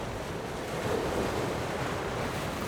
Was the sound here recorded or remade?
recorded